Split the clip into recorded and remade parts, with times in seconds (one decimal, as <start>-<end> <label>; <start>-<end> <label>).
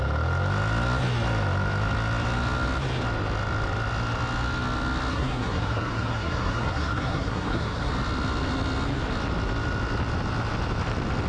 0.0-5.1 recorded; 5.1-7.9 remade; 7.9-11.3 recorded